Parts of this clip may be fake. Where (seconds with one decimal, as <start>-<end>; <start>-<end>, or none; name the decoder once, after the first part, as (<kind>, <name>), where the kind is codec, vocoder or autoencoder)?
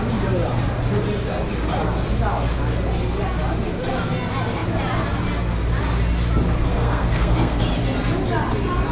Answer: 6.7-7.6 (codec, SNAC)